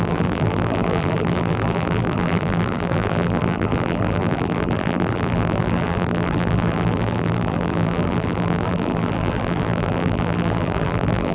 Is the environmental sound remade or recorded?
remade